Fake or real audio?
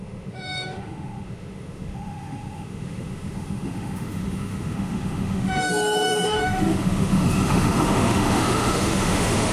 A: fake